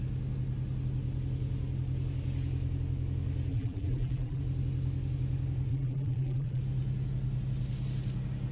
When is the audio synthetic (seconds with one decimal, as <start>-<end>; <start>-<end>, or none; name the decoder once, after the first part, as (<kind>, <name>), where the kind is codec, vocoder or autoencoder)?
3.5-4.4 (vocoder, BigVGAN v2); 5.7-6.6